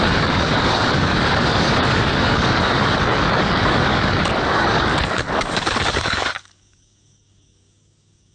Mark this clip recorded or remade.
remade